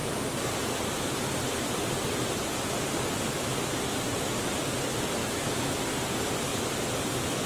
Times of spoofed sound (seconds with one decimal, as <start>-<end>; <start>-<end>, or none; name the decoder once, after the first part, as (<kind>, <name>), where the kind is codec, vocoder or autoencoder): 5.2-5.9 (autoencoder, DAC-VAE)